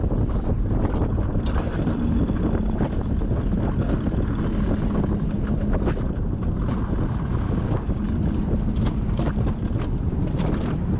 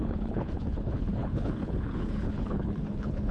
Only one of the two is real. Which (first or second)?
first